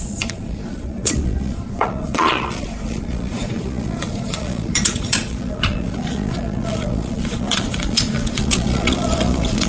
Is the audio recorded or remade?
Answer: remade